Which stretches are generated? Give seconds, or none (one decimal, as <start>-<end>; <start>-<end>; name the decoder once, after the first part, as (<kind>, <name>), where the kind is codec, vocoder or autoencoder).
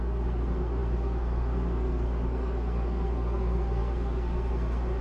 0.0-5.0 (codec, SNAC)